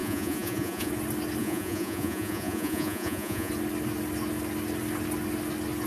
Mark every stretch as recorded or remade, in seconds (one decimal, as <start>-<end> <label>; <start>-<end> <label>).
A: 0.0-0.9 remade; 0.9-1.4 recorded; 1.4-3.5 remade; 3.5-5.9 recorded